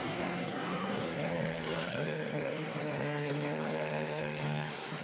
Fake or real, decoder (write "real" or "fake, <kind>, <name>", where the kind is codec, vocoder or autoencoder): fake, codec, SNAC